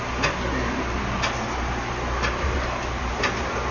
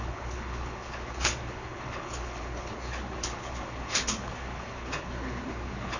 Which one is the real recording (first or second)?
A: first